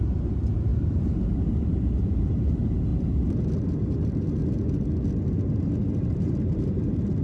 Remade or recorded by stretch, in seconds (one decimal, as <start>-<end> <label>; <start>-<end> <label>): 0.0-2.9 remade; 2.9-3.6 recorded; 3.6-4.4 remade; 4.4-5.6 recorded; 5.6-7.2 remade